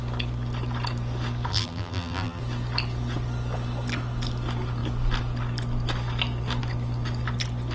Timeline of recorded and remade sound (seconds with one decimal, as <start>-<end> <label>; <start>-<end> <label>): 0.0-1.5 recorded; 1.5-2.4 remade; 2.4-7.7 recorded